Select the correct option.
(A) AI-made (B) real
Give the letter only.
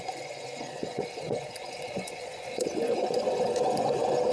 A